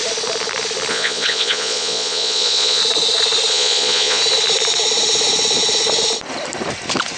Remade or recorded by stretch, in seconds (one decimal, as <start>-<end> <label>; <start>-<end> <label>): 0.0-0.9 recorded; 0.9-2.8 remade; 2.8-3.5 recorded; 3.5-4.2 remade; 4.2-7.2 recorded

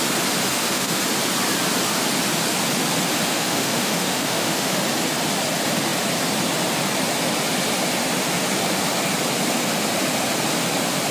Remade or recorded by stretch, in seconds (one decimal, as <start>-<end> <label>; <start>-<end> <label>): 0.0-0.5 recorded; 0.5-1.0 remade; 1.0-3.3 recorded; 3.3-4.8 remade; 4.8-11.1 recorded

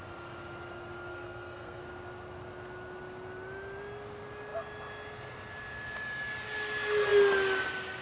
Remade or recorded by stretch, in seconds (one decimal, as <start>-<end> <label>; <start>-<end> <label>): 0.0-1.1 recorded; 1.1-1.8 remade; 1.8-8.0 recorded